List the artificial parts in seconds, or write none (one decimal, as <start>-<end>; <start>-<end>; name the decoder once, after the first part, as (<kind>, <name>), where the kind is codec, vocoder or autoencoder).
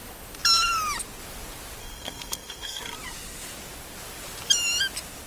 1.8-2.8 (codec, SNAC)